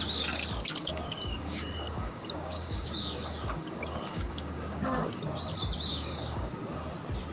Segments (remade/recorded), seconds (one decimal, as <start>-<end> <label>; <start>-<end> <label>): 0.0-0.8 recorded; 0.8-5.2 remade; 5.2-5.9 recorded; 5.9-6.5 remade; 6.5-7.3 recorded